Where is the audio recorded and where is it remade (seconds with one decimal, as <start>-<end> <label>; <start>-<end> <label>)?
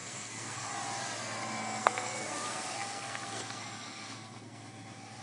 0.0-0.7 remade; 0.7-1.8 recorded; 1.8-5.2 remade